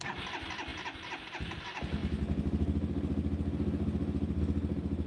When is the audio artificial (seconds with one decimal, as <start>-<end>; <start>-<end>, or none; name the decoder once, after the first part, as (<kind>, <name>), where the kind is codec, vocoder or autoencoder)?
none